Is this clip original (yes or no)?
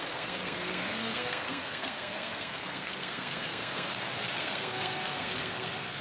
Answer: no